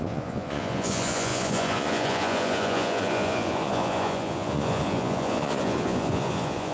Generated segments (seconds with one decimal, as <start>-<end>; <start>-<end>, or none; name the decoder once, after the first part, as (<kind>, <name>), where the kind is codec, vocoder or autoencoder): 0.0-6.7 (vocoder, Vocos)